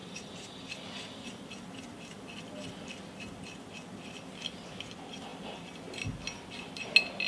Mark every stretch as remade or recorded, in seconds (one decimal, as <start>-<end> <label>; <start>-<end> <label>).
0.0-7.3 recorded